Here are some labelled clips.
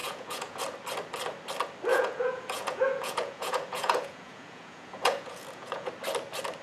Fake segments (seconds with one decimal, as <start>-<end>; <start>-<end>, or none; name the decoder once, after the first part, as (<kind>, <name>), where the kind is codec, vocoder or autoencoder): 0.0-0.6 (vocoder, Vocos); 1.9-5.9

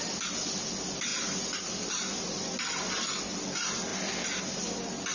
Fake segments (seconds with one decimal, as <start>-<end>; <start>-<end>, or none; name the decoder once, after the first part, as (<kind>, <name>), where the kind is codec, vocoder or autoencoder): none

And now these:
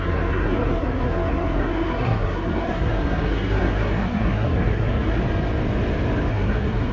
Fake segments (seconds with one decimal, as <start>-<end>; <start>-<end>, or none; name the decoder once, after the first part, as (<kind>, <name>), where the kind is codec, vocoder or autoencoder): 0.0-5.2 (codec, SNAC); 6.3-6.9